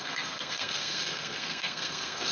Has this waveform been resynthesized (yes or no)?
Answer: yes